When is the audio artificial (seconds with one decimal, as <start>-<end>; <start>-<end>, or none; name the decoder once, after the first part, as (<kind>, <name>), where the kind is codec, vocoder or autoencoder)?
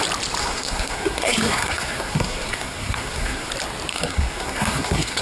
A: 0.4-3.5 (codec, SNAC); 3.9-5.2